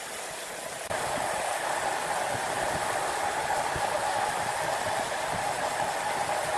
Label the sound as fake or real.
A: real